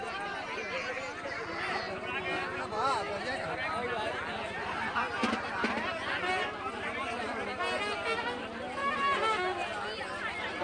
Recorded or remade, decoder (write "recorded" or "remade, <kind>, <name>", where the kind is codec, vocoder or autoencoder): recorded